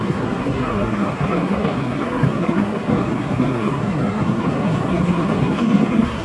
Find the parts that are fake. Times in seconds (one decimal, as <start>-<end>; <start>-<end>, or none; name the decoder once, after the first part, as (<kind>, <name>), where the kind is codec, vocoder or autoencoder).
0.0-6.2 (codec, SNAC)